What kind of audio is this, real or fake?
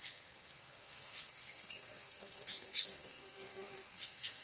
fake